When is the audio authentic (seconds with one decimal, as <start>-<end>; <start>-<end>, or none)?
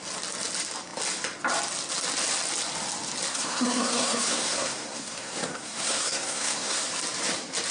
0.0-3.3; 6.8-7.7